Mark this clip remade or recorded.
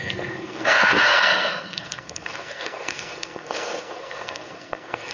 remade